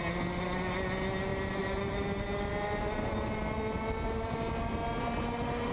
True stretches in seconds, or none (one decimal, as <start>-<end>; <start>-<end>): 0.0-5.7